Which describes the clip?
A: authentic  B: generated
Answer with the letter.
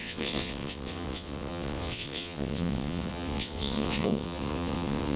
B